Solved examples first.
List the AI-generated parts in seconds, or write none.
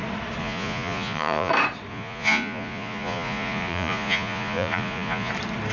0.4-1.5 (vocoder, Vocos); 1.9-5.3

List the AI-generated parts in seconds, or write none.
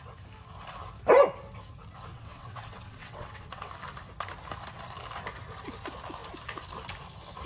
2.1-3.7 (vocoder, WaveNeXt)